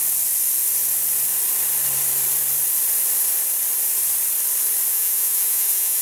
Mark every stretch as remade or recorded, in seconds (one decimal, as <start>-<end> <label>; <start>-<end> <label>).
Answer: 0.0-4.9 recorded; 4.9-6.0 remade